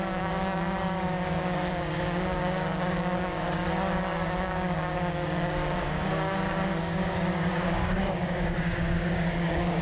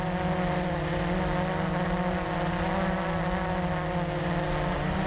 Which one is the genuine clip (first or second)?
second